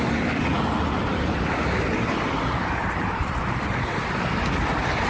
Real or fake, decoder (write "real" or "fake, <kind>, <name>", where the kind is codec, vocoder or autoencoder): real